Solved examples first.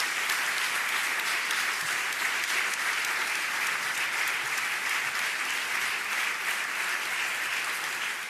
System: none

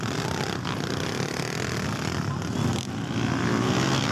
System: none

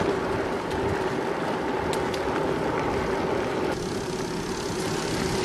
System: none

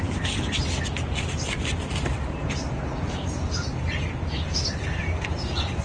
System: none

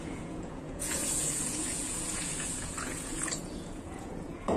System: vocoder, Vocos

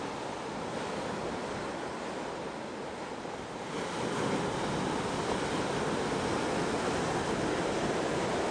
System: none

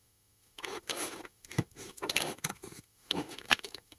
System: autoencoder, DAC-VAE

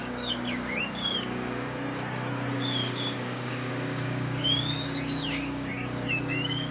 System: codec, DAC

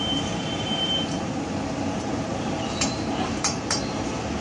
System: vocoder, BigVGAN v2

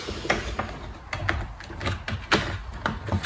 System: none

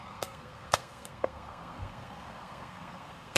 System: codec, SNAC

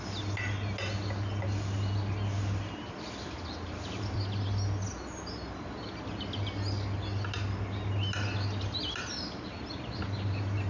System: none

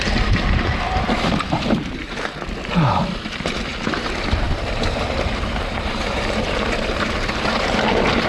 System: vocoder, BigVGAN v2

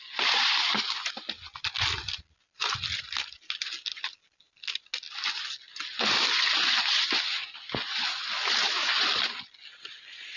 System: none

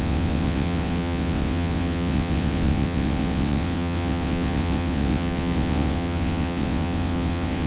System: vocoder, WaveNeXt